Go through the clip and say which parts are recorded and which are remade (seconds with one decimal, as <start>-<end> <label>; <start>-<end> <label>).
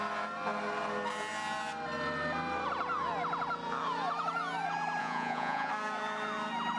0.0-5.0 recorded; 5.0-5.7 remade; 5.7-6.8 recorded